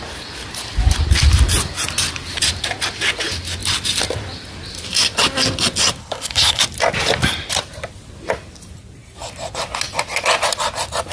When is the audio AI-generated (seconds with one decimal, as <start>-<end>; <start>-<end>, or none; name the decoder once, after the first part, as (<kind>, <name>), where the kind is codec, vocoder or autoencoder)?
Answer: 6.0-6.6 (codec, HILCodec)

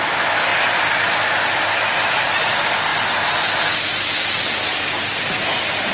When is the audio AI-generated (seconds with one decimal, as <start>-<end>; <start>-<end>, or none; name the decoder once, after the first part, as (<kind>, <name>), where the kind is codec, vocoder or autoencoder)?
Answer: none

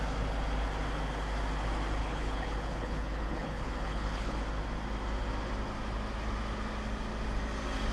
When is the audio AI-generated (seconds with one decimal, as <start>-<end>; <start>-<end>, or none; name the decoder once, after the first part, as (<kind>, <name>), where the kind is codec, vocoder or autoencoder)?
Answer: 2.0-4.4 (codec, HILCodec)

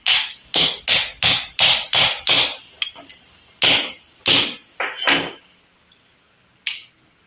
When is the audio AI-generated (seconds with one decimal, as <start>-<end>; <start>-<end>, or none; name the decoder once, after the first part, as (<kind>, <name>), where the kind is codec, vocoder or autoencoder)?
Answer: none

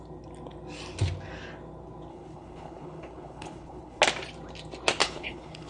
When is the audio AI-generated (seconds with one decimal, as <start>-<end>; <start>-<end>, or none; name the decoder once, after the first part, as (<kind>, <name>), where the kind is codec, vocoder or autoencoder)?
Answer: 2.1-4.0 (codec, HILCodec); 5.0-5.7

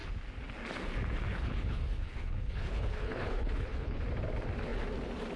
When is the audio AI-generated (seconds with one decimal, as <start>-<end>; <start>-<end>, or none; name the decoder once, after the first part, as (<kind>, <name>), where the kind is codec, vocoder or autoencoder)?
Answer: 1.3-4.0 (codec, HILCodec)

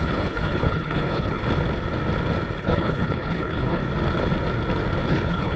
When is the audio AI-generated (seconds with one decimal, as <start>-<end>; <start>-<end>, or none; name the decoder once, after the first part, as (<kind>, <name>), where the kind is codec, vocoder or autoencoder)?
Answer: 0.0-1.4 (codec, HILCodec); 2.6-3.8; 5.1-5.6